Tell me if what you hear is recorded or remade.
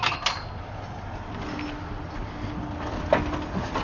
recorded